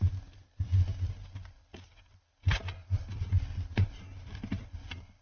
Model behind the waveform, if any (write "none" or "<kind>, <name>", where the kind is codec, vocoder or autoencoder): none